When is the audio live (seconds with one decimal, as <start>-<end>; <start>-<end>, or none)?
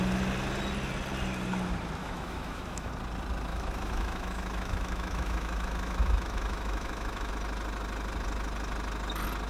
0.0-2.0; 2.9-3.5; 7.3-9.5